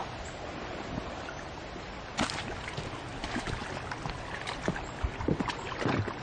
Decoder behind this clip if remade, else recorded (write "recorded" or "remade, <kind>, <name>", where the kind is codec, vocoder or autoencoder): recorded